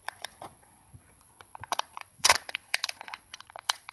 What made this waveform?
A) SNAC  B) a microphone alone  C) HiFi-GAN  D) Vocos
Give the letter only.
D